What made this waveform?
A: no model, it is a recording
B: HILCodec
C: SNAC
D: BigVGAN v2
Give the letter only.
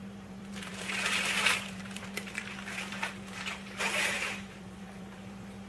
D